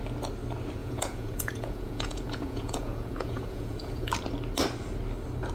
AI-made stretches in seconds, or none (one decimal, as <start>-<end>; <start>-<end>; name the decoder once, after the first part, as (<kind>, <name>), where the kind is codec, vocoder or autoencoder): 0.8-4.1 (vocoder, Vocos)